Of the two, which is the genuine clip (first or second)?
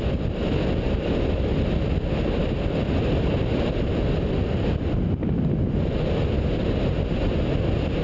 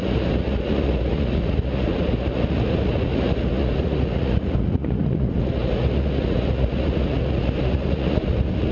first